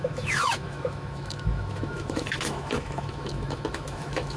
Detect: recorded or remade remade